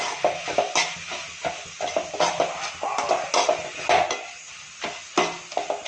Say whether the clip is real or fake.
real